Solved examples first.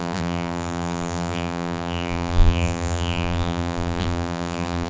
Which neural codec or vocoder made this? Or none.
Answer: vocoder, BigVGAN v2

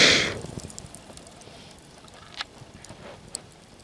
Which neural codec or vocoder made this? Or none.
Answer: vocoder, BigVGAN v2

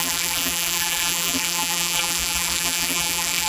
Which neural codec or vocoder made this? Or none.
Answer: vocoder, BigVGAN v2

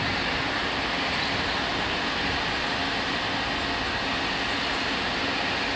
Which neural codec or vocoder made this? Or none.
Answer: none